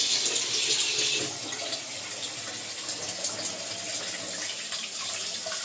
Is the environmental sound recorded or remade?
recorded